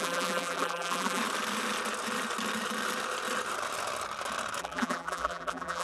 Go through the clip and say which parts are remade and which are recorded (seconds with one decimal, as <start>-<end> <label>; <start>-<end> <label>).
0.0-1.2 remade; 1.2-4.6 recorded; 4.6-5.8 remade